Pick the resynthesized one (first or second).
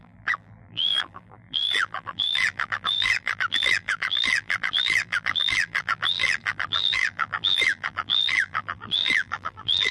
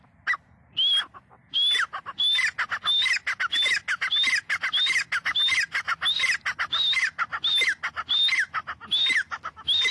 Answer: first